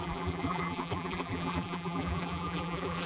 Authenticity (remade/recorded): remade